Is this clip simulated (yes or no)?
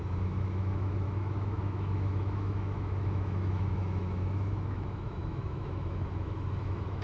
yes